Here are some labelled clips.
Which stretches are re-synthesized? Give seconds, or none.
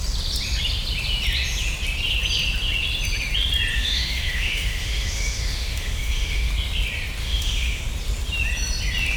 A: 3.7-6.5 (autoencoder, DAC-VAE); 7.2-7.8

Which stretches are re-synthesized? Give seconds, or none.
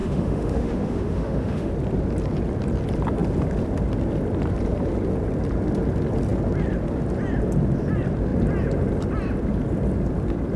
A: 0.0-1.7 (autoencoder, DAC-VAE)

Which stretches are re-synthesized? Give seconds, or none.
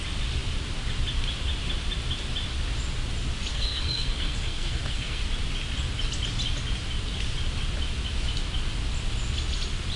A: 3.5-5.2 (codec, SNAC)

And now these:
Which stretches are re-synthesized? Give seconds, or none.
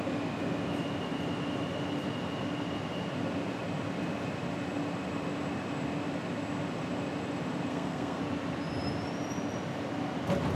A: 7.7-8.2 (codec, SNAC)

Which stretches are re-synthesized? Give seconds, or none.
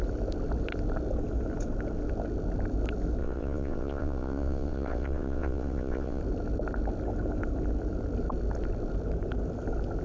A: 3.2-6.2 (vocoder, WaveNeXt)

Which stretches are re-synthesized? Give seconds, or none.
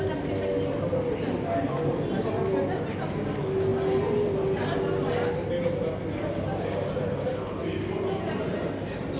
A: none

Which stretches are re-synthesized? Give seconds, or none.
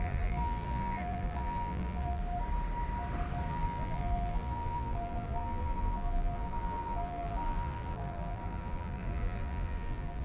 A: 0.0-2.2 (vocoder, BigVGAN v2); 3.5-10.2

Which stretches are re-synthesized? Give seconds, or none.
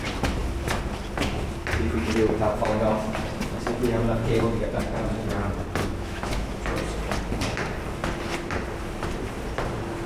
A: 5.8-6.5 (autoencoder, DAC-VAE)